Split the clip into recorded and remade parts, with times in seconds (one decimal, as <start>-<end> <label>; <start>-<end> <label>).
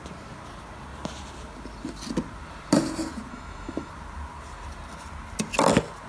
0.0-3.3 recorded; 3.3-3.9 remade; 3.9-6.1 recorded